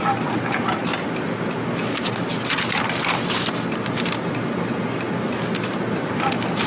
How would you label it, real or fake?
real